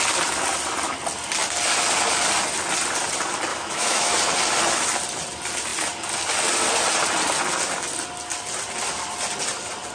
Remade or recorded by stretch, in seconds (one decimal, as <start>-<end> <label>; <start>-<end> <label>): 0.0-3.5 recorded; 3.5-4.1 remade; 4.1-9.9 recorded